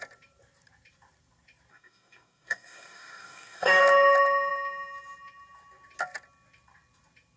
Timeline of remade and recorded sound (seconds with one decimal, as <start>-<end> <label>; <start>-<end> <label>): 0.0-1.7 recorded; 1.7-3.8 remade; 3.8-7.4 recorded